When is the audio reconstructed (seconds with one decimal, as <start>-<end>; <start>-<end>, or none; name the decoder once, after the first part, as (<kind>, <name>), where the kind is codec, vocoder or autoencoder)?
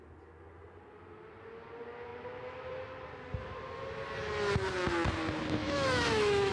5.6-6.5 (autoencoder, DAC-VAE)